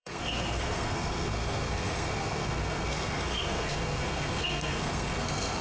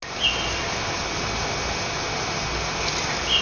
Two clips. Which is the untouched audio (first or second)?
second